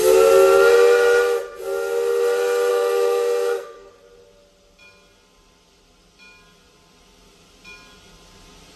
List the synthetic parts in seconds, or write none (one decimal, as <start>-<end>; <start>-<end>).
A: 2.7-3.9